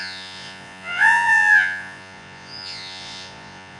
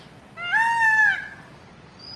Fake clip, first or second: first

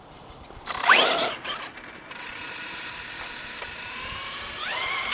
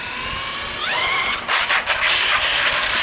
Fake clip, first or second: first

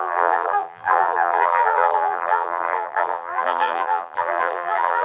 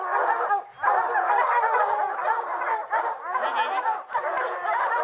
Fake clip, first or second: first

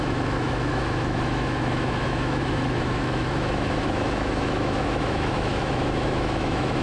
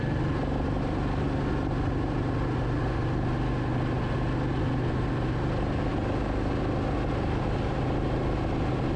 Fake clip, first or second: first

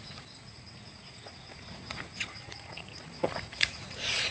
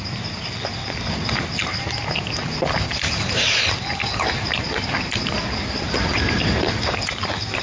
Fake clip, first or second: first